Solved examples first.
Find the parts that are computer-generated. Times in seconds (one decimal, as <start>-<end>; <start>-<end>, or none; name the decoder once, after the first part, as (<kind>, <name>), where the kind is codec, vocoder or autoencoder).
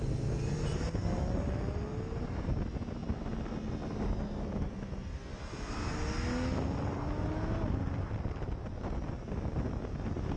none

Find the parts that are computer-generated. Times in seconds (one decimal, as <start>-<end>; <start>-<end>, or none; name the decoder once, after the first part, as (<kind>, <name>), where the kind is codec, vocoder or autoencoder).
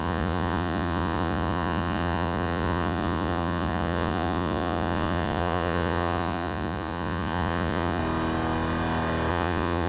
0.0-8.0 (vocoder, Vocos); 9.3-9.9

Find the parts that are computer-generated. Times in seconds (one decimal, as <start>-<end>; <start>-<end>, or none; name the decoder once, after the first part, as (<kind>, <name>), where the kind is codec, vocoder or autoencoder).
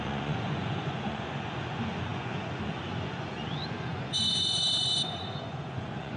0.0-6.2 (vocoder, Vocos)